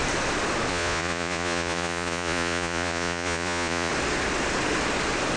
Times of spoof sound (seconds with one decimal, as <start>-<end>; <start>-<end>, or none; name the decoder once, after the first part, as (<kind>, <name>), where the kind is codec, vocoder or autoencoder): 0.7-3.9 (vocoder, Vocos)